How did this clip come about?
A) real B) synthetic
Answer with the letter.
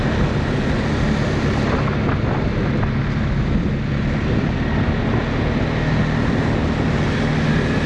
A